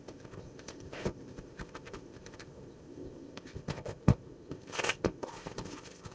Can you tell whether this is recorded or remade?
remade